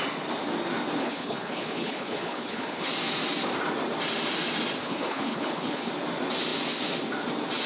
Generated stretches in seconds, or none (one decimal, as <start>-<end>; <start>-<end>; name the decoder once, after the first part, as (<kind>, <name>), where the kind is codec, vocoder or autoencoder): 1.0-2.9 (codec, HILCodec); 4.8-5.9